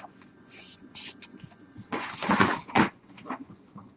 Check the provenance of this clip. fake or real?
fake